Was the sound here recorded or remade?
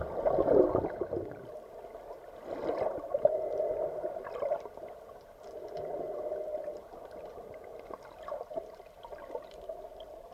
recorded